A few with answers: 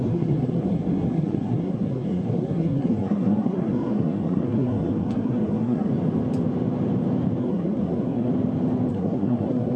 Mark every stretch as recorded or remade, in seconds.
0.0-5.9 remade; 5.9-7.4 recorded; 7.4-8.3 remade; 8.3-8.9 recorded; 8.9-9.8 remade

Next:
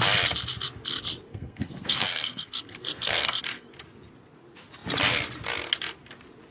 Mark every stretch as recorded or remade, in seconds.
0.0-1.3 recorded; 1.3-3.4 remade; 3.4-6.5 recorded

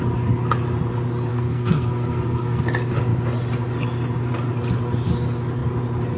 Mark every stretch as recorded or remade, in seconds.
0.0-1.3 recorded; 1.3-2.6 remade; 2.6-6.2 recorded

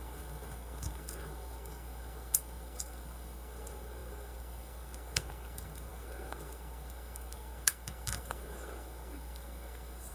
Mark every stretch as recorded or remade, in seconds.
0.0-10.1 remade

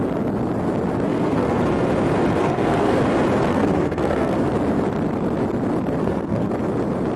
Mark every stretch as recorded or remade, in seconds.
0.0-1.1 recorded; 1.1-1.6 remade; 1.6-2.4 recorded; 2.4-3.0 remade; 3.0-3.5 recorded; 3.5-4.5 remade; 4.5-6.0 recorded; 6.0-6.5 remade; 6.5-7.2 recorded